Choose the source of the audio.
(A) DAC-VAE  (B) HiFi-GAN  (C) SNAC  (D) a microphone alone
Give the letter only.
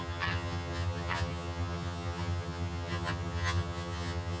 B